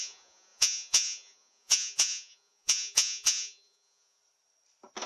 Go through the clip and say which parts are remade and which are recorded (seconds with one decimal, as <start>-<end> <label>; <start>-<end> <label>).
0.0-4.2 remade; 4.2-5.1 recorded

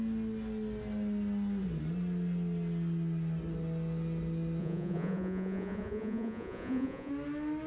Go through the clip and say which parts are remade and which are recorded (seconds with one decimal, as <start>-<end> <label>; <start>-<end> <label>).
0.0-4.6 recorded; 4.6-7.1 remade; 7.1-7.7 recorded

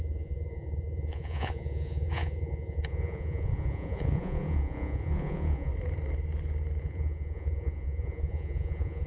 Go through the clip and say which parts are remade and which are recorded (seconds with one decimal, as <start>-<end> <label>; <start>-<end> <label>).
0.0-5.7 remade; 5.7-6.8 recorded; 6.8-9.1 remade

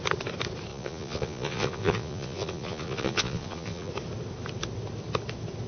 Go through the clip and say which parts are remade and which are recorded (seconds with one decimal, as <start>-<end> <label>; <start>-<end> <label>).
0.0-0.7 recorded; 0.7-3.9 remade; 3.9-5.7 recorded

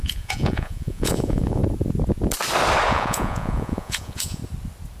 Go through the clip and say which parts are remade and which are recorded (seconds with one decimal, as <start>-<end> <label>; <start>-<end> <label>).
0.0-1.6 remade; 1.6-2.9 recorded; 2.9-4.4 remade; 4.4-5.0 recorded